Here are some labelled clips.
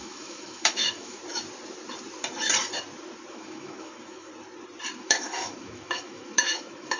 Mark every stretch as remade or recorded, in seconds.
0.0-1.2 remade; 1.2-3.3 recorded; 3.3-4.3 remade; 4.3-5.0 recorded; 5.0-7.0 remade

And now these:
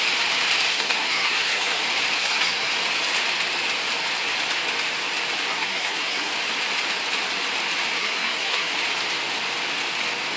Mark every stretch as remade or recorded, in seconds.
0.0-0.7 recorded; 0.7-1.8 remade; 1.8-2.2 recorded; 2.2-2.7 remade; 2.7-5.5 recorded; 5.5-6.3 remade; 6.3-8.0 recorded; 8.0-8.7 remade; 8.7-10.4 recorded

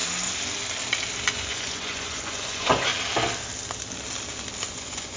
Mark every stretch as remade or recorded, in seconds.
0.0-1.3 recorded; 1.3-2.9 remade; 2.9-4.7 recorded; 4.7-5.2 remade

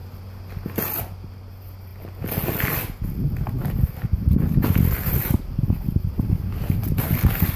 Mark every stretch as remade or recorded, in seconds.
0.0-7.6 recorded

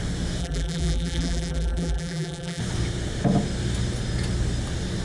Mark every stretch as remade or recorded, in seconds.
0.0-0.4 recorded; 0.4-2.6 remade; 2.6-5.0 recorded

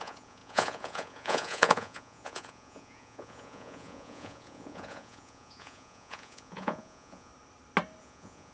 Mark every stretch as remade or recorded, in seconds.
0.0-7.3 remade; 7.3-8.0 recorded; 8.0-8.5 remade

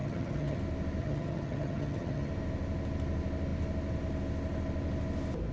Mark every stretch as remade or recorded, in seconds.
0.0-0.6 remade; 0.6-1.0 recorded; 1.0-2.3 remade; 2.3-5.5 recorded